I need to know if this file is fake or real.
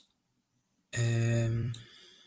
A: fake